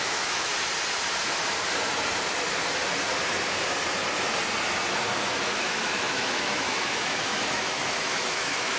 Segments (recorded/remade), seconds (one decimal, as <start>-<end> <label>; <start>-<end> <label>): 0.0-0.5 remade; 0.5-5.4 recorded; 5.4-8.8 remade